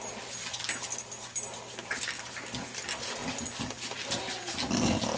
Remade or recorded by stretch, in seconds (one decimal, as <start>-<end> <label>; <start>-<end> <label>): 0.0-5.2 recorded